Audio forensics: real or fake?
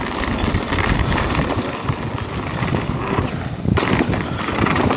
real